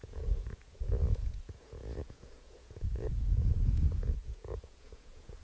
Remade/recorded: remade